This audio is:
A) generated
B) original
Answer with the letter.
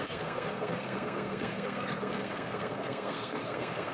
A